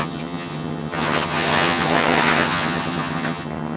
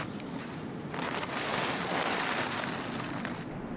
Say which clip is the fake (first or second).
first